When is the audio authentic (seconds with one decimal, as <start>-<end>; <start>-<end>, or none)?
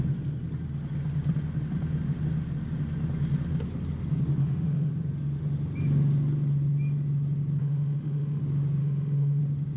0.0-4.4; 4.9-7.6; 8.4-8.8; 9.4-9.8